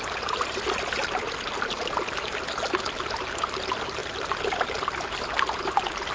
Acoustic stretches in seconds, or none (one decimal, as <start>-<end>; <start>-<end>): 0.0-6.1